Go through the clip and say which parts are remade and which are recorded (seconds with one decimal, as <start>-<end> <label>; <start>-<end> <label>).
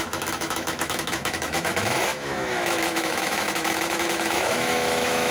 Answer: 0.0-5.3 remade